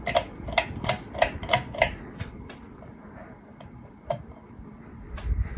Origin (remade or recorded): recorded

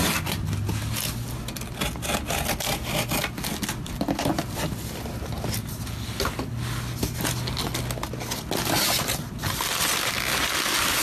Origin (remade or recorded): recorded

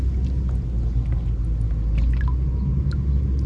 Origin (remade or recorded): recorded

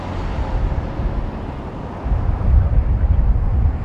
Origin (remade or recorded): recorded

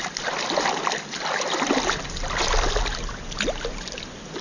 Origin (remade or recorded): recorded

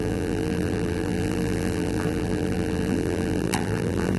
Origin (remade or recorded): remade